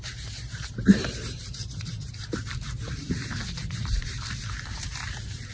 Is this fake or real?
fake